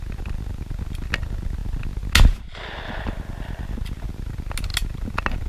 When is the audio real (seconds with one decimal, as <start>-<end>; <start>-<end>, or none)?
0.0-5.5

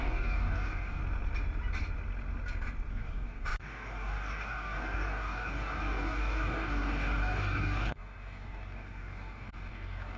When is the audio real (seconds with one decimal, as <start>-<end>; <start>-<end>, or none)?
1.0-2.9

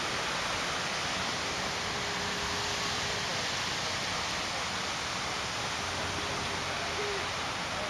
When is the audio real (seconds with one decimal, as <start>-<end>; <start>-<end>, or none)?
0.0-7.9

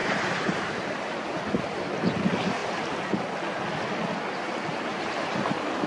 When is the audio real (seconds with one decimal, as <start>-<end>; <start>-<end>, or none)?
0.6-4.9; 5.5-5.9

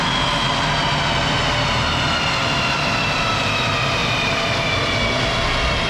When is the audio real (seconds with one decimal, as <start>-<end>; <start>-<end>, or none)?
0.0-2.4; 3.3-4.0; 4.5-5.9